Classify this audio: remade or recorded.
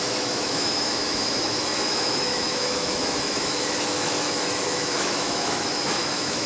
remade